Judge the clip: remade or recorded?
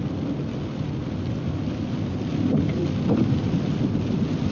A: remade